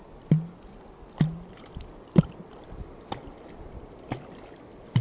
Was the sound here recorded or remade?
recorded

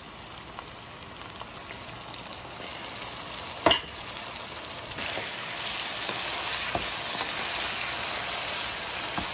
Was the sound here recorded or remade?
recorded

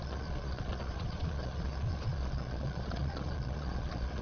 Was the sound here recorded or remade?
remade